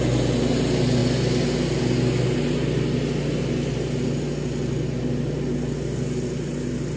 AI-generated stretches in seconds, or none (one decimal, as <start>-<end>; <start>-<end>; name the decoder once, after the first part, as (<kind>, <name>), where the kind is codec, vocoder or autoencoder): none